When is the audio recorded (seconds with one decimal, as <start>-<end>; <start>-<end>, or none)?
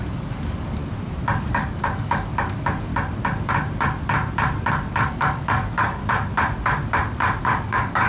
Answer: 0.8-1.5; 2.9-5.1; 6.0-7.4